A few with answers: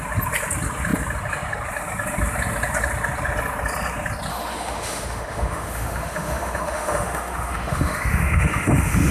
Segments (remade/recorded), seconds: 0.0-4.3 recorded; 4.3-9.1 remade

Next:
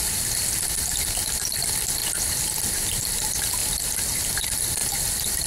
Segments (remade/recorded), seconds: 0.0-5.5 recorded

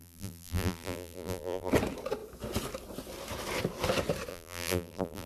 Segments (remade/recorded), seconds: 0.0-1.7 remade; 1.7-4.3 recorded; 4.3-5.3 remade

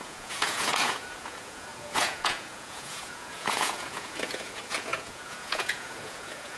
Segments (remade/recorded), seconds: 0.0-6.6 remade